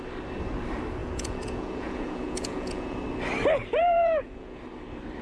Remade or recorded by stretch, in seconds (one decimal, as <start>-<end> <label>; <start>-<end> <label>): 0.0-1.0 recorded; 1.0-3.0 remade; 3.0-3.8 recorded; 3.8-4.6 remade; 4.6-5.2 recorded